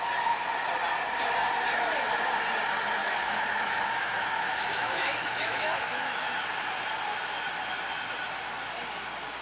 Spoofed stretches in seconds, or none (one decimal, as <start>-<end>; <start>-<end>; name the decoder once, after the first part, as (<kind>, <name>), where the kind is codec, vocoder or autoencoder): 3.0-6.4 (autoencoder, DAC-VAE)